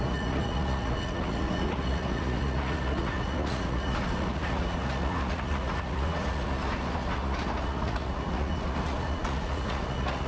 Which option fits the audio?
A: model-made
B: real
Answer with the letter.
A